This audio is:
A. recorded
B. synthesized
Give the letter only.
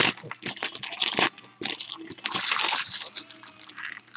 A